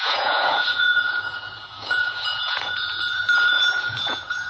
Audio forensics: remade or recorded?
remade